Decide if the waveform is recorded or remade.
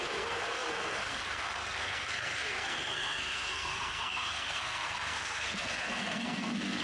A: remade